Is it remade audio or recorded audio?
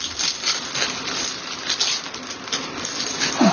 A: recorded